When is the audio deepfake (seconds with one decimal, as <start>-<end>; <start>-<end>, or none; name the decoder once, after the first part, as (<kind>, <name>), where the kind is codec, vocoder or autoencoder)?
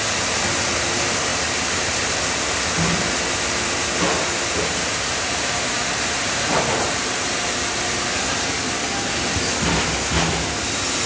1.3-2.4 (vocoder, BigVGAN v2); 4.1-8.6